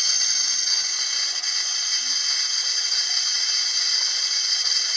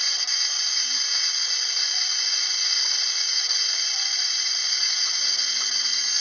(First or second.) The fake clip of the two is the first